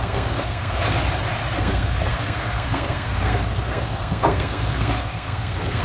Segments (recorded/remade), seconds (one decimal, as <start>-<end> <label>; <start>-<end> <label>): 0.0-1.0 remade; 1.0-1.6 recorded; 1.6-5.8 remade